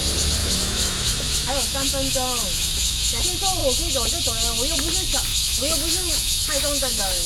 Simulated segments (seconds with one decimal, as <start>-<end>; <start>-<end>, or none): 0.4-3.2; 5.3-7.3